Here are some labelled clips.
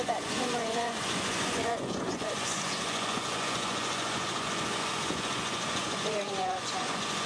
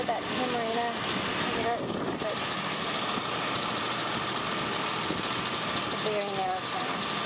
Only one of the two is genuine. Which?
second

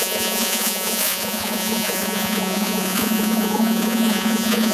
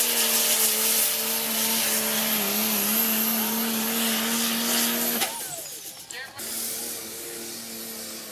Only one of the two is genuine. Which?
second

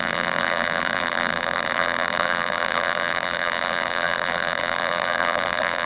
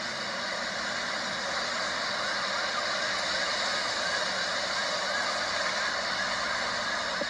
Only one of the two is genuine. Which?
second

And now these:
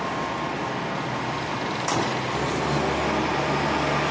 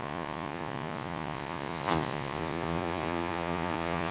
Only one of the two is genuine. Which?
first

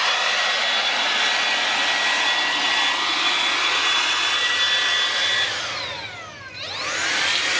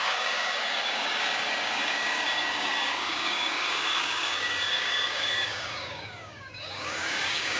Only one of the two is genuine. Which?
first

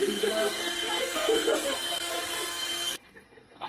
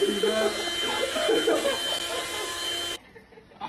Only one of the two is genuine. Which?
second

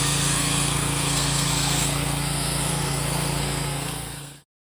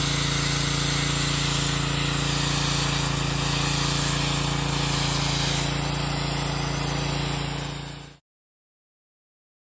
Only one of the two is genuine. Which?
second